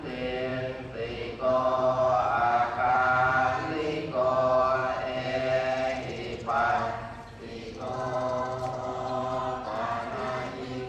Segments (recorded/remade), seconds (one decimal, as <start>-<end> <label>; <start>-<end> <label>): 0.0-0.5 recorded; 0.5-3.3 remade; 3.3-4.8 recorded; 4.8-9.4 remade; 9.4-10.9 recorded